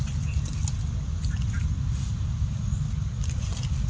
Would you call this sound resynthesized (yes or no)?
no